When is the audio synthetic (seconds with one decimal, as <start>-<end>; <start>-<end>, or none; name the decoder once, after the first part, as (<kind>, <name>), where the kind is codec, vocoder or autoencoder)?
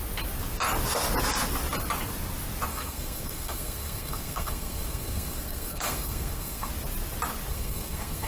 2.7-6.7 (codec, SNAC); 7.5-8.3